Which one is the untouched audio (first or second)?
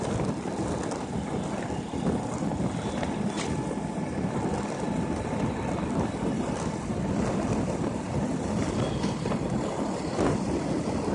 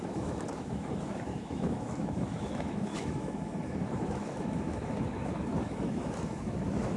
first